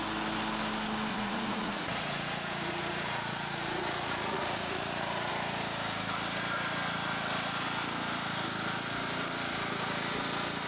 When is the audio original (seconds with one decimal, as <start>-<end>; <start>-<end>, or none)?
0.0-1.1; 5.3-10.7